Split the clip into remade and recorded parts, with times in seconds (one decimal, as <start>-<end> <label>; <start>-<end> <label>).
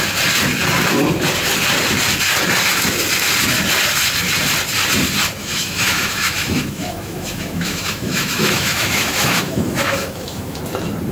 0.0-5.4 recorded; 5.4-10.6 remade; 10.6-11.1 recorded